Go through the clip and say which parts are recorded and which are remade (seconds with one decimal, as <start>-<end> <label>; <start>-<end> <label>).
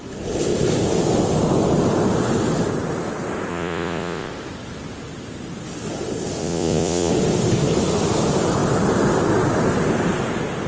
0.0-3.5 recorded; 3.5-4.3 remade; 4.3-6.4 recorded; 6.4-7.1 remade; 7.1-10.7 recorded